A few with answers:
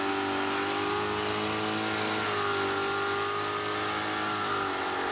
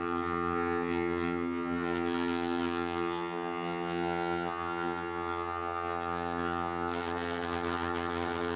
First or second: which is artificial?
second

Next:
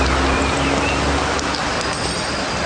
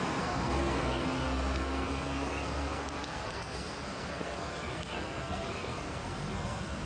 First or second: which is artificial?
second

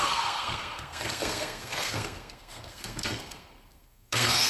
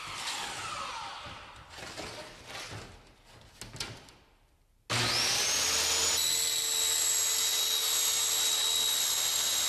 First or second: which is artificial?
first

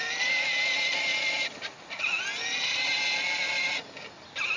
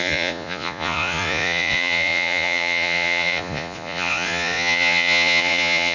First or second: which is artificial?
second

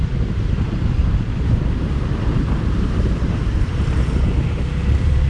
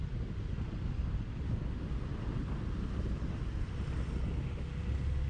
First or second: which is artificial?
first